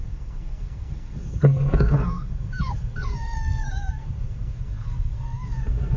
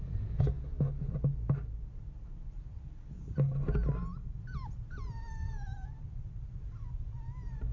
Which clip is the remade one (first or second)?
first